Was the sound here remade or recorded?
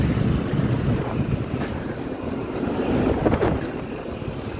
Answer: remade